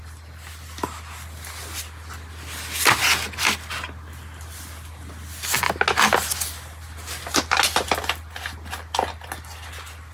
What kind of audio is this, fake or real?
real